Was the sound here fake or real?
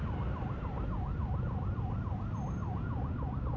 real